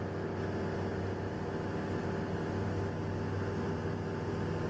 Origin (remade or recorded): recorded